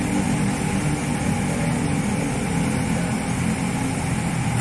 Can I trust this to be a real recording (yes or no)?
yes